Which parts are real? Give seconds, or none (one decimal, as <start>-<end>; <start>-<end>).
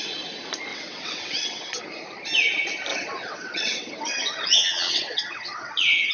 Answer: 0.0-0.7; 1.8-2.9